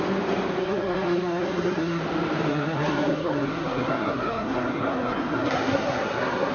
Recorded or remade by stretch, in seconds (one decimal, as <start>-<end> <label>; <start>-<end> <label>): 0.0-0.6 recorded; 0.6-2.0 remade; 2.0-2.5 recorded; 2.5-6.5 remade